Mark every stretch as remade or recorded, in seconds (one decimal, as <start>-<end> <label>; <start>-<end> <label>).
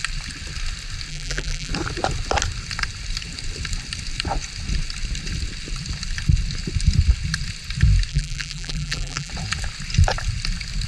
0.0-1.1 recorded; 1.1-1.7 remade; 1.7-8.1 recorded; 8.1-9.3 remade; 9.3-10.9 recorded